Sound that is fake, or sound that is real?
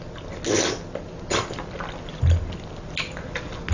real